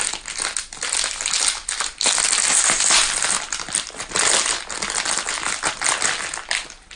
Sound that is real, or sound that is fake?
real